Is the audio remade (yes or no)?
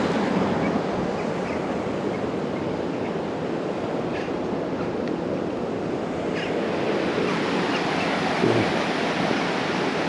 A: no